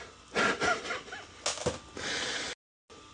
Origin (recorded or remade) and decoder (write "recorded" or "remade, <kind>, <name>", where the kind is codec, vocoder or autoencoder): recorded